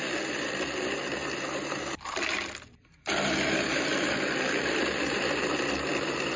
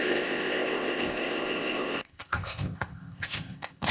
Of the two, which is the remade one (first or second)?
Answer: second